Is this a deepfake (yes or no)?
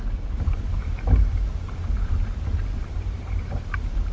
yes